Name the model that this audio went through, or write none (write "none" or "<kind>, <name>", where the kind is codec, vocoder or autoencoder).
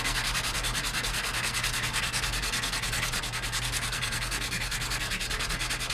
codec, SNAC